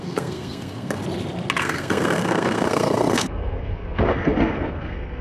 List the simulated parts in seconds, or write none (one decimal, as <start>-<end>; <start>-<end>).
0.0-1.0; 1.6-5.2